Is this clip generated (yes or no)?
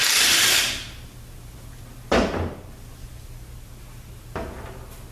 no